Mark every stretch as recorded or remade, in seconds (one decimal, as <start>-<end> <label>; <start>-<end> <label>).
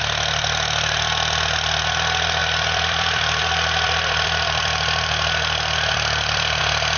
0.0-2.4 recorded; 2.4-6.6 remade; 6.6-7.0 recorded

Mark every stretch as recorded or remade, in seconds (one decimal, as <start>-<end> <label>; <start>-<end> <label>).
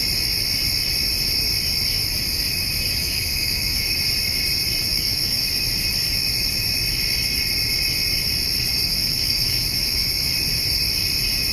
0.0-3.0 recorded; 3.0-4.0 remade; 4.0-4.9 recorded; 4.9-5.5 remade; 5.5-8.9 recorded; 8.9-10.0 remade; 10.0-11.5 recorded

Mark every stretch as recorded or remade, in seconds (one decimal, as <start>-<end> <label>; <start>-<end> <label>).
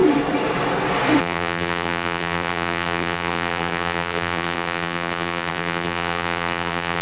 0.0-1.2 recorded; 1.2-7.0 remade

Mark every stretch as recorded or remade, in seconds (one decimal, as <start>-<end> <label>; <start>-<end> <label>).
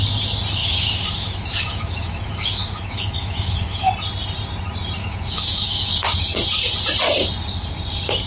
0.0-0.6 recorded; 0.6-3.9 remade; 3.9-5.0 recorded; 5.0-5.9 remade; 5.9-8.3 recorded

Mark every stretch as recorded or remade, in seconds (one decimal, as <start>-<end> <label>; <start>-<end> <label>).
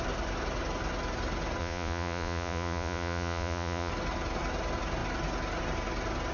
0.0-1.6 recorded; 1.6-3.9 remade; 3.9-6.3 recorded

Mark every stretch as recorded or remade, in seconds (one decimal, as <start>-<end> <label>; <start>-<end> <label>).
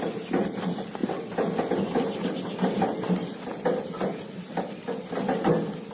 0.0-5.9 recorded